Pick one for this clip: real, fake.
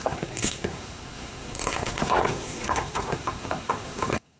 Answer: fake